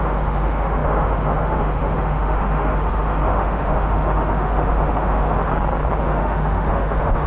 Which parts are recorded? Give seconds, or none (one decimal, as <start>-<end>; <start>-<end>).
5.5-6.0